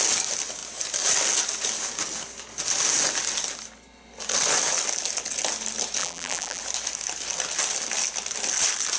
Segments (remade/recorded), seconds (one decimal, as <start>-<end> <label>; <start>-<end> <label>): 0.0-6.0 recorded; 6.0-6.6 remade; 6.6-9.0 recorded